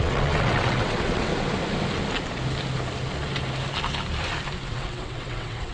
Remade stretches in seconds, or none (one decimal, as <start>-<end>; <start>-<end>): 0.0-1.3; 4.7-5.7